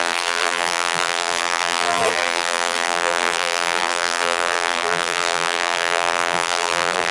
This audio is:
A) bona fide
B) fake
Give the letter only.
B